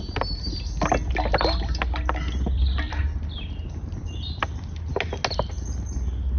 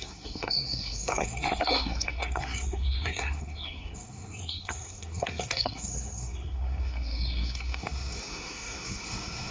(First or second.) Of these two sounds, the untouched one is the first